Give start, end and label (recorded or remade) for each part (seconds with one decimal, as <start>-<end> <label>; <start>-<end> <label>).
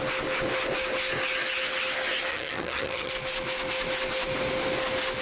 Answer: 0.0-2.3 recorded; 2.3-3.1 remade; 3.1-5.2 recorded